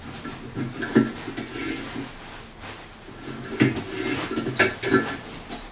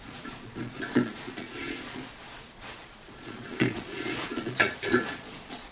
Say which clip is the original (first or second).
first